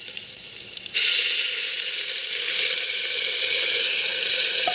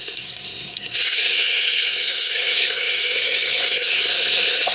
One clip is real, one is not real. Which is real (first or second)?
first